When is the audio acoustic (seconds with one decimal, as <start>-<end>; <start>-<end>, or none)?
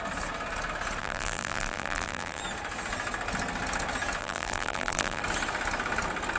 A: 0.0-1.0; 2.4-4.2; 5.2-6.4